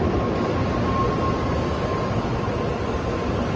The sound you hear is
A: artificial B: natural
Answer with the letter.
B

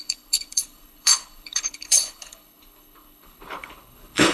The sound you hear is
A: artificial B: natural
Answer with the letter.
A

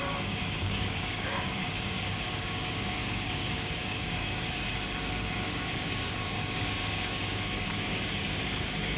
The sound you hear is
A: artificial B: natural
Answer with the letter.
A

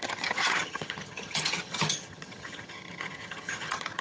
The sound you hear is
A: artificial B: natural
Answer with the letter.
A